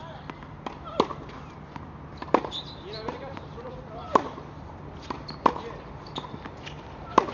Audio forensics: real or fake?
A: real